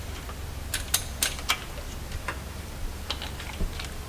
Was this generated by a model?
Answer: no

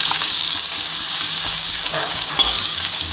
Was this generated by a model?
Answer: yes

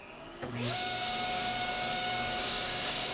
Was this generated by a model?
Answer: yes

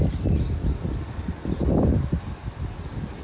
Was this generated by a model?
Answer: no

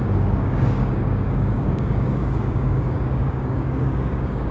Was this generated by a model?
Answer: yes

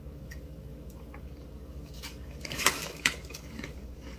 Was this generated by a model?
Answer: yes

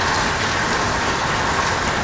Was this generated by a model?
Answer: no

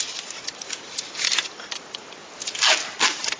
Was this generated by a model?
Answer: no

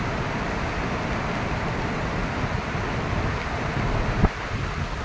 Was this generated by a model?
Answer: no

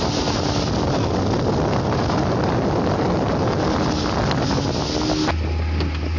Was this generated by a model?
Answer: no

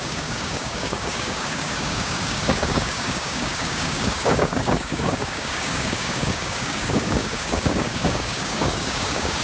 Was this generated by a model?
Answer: yes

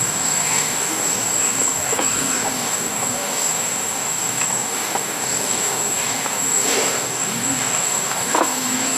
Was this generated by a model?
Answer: yes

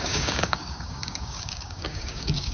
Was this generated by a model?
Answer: yes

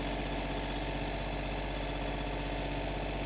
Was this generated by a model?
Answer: no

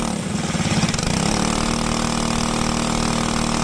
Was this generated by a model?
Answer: no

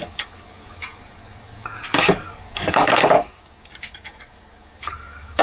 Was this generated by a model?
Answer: yes